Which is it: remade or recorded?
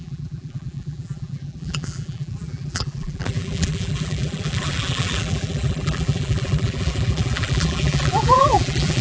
remade